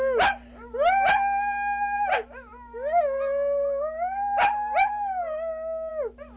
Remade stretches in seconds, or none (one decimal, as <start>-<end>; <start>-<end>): none